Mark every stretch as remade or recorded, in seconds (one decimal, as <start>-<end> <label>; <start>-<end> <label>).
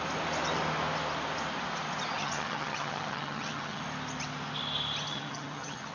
0.0-2.2 recorded; 2.2-3.8 remade; 3.8-5.1 recorded; 5.1-5.9 remade